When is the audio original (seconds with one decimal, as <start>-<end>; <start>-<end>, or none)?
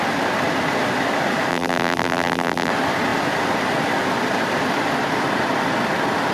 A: 0.0-1.5; 2.7-6.3